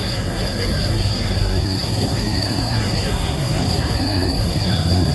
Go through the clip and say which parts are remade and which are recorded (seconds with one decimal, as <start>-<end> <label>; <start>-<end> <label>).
0.0-5.1 remade